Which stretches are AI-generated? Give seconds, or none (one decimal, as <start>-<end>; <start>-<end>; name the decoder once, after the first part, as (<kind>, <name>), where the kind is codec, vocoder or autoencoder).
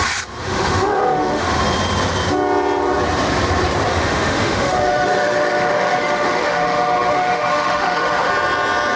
0.4-1.6 (autoencoder, DAC-VAE); 3.9-8.3